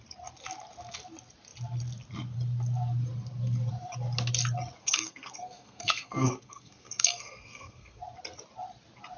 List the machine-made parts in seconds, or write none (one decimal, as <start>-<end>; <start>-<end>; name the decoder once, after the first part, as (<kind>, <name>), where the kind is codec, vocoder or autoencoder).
4.8-8.0 (codec, SNAC)